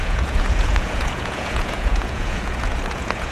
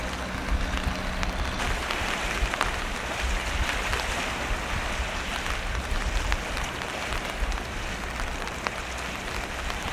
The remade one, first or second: first